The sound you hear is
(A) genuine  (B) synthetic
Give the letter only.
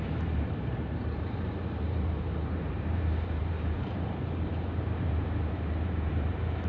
B